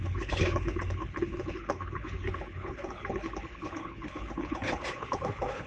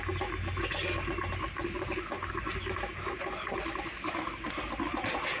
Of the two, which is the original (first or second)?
second